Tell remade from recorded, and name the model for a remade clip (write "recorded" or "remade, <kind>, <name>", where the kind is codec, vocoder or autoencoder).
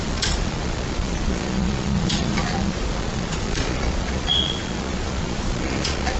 remade, vocoder, Vocos